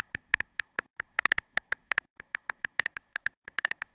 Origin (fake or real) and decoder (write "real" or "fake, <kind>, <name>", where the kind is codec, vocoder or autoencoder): fake, codec, SNAC